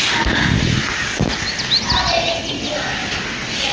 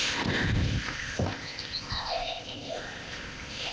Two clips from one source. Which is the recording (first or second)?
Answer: first